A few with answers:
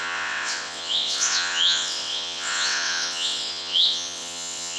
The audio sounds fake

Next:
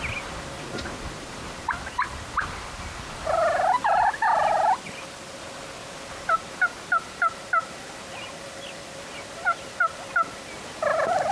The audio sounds real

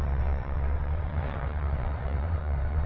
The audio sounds fake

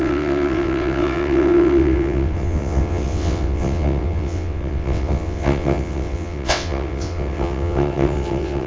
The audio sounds fake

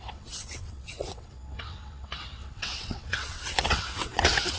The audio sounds fake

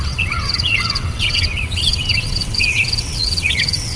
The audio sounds fake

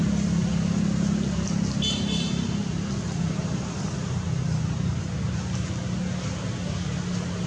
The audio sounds real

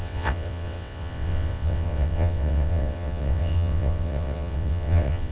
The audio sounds fake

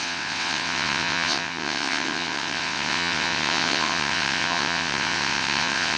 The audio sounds fake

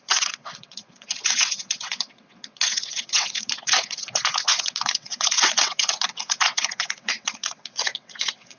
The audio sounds fake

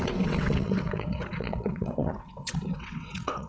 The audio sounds fake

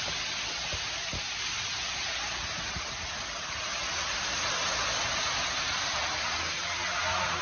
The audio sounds real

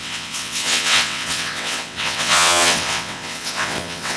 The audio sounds fake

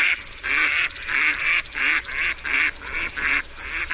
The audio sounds real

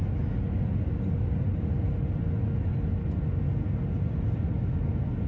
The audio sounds real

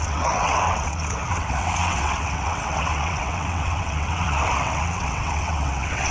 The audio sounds fake